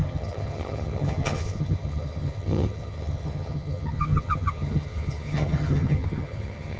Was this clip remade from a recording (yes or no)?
yes